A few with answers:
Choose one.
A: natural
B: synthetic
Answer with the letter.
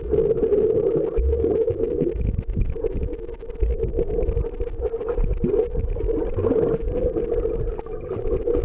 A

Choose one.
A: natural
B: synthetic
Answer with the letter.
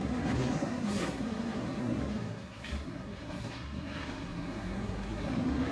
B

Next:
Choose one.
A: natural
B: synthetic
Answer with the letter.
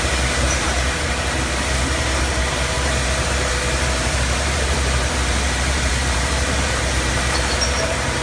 B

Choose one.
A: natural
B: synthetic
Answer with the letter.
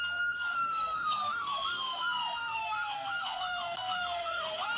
B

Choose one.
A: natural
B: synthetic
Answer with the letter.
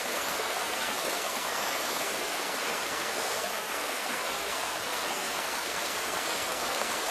B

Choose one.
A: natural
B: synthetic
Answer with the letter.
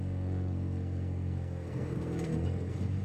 B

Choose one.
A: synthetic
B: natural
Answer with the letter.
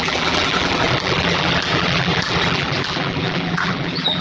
A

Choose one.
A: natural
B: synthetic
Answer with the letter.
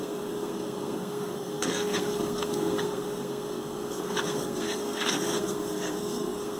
B